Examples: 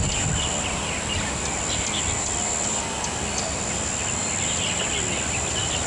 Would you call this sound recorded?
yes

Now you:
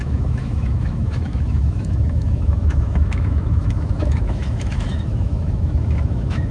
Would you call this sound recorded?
no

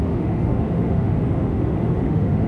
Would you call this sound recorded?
no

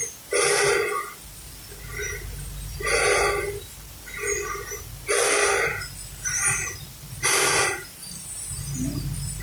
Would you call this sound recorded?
yes